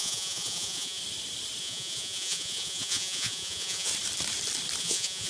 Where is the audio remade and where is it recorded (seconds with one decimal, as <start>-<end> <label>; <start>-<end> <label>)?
0.0-1.0 remade; 1.0-1.6 recorded; 1.6-3.9 remade; 3.9-4.8 recorded; 4.8-5.3 remade